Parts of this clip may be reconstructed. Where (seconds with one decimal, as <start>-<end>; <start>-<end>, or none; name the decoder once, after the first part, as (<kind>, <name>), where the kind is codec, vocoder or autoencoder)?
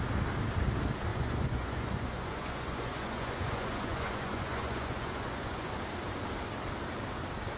1.1-5.7 (vocoder, Vocos)